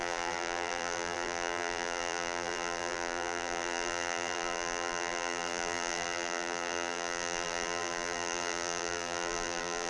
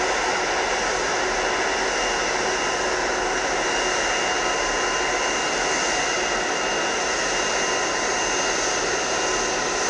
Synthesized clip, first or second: first